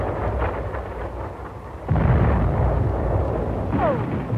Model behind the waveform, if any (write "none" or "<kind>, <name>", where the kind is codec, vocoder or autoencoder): none